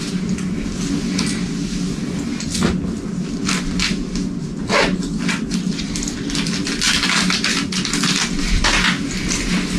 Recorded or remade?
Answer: recorded